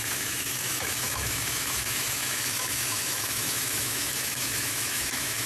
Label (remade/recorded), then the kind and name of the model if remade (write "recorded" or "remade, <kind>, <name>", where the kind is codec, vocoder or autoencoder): remade, autoencoder, DAC-VAE